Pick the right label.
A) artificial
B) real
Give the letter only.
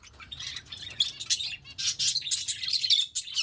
B